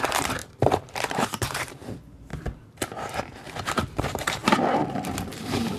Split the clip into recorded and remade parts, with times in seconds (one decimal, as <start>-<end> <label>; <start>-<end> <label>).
0.0-2.3 remade; 2.3-4.0 recorded; 4.0-5.8 remade